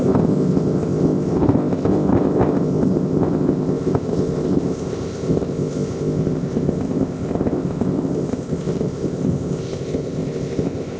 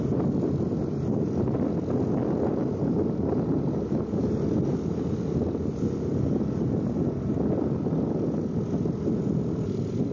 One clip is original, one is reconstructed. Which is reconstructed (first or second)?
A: first